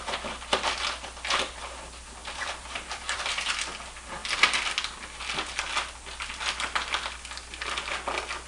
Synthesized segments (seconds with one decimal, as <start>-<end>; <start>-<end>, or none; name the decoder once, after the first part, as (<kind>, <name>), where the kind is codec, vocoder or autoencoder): 2.2-3.5 (vocoder, BigVGAN v2)

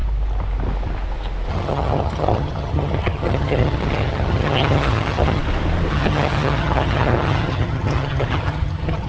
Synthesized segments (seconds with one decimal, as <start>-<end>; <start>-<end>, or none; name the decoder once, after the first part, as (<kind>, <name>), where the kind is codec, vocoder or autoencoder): 1.5-5.4 (vocoder, HiFi-GAN); 5.9-9.1

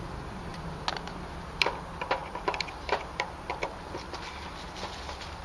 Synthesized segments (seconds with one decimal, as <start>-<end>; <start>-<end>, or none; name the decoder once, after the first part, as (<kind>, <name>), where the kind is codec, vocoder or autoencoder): 2.2-3.5 (vocoder, BigVGAN v2)

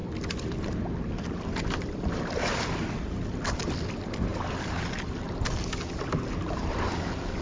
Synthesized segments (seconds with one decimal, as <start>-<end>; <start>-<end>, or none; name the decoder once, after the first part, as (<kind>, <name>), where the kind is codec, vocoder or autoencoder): none

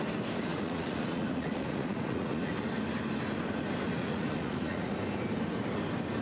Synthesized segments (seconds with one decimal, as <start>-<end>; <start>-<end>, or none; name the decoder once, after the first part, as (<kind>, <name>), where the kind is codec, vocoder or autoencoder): 0.5-2.5 (vocoder, Vocos); 3.9-4.9

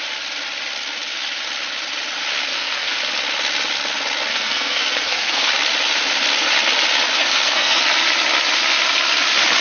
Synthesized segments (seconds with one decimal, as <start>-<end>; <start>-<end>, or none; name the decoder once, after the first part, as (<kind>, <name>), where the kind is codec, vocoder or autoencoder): 2.5-3.0 (codec, SNAC); 4.3-5.5; 7.2-7.8